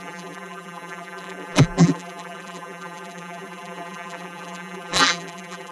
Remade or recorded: remade